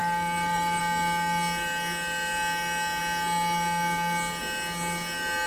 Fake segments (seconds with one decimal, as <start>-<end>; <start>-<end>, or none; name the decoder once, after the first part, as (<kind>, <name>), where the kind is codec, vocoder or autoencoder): 0.0-0.8 (vocoder, BigVGAN v2)